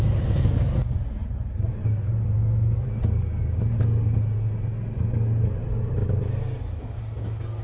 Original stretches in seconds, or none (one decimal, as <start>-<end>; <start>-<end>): 0.0-7.6